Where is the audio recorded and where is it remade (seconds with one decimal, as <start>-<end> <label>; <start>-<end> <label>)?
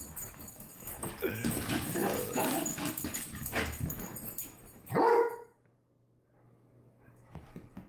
0.0-4.1 remade; 4.1-5.0 recorded; 5.0-7.9 remade